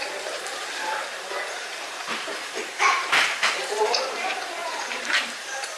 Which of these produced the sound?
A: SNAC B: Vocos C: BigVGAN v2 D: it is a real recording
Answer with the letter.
C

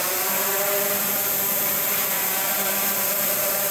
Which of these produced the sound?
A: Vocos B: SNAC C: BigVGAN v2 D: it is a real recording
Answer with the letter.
C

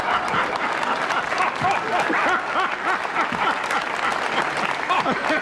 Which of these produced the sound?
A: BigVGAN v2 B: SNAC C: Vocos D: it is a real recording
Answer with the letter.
D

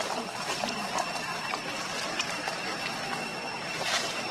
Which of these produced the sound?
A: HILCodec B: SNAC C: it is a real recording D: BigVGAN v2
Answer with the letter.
D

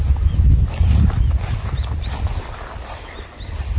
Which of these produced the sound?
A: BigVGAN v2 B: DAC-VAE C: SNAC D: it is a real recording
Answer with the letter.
D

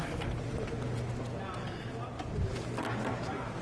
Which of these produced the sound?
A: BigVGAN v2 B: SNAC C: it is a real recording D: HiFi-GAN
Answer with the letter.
C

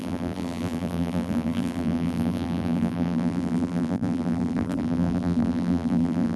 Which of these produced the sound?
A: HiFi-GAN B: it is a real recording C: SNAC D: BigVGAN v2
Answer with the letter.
D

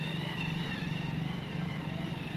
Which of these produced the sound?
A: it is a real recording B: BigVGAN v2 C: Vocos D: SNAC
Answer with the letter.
A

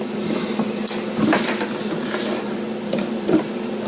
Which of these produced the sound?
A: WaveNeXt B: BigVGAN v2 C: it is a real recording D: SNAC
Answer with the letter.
B